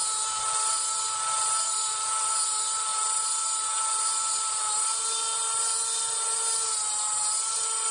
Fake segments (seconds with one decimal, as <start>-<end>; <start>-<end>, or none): none